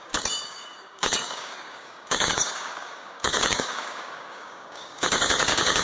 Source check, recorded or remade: remade